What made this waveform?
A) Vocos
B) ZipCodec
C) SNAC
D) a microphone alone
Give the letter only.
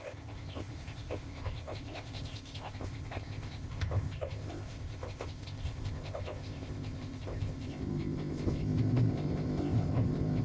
B